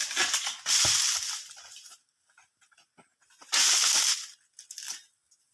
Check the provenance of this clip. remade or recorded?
recorded